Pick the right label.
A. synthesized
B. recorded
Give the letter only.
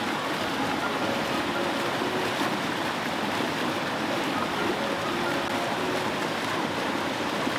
B